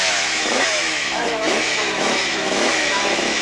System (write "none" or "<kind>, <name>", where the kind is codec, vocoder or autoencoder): autoencoder, DAC-VAE